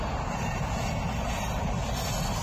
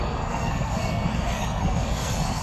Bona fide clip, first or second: first